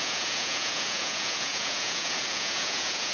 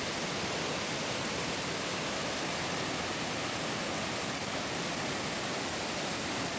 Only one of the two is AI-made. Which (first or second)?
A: first